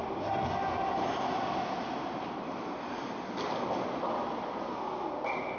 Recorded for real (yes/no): yes